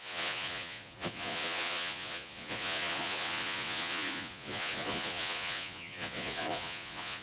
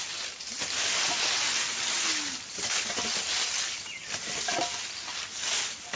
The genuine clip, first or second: second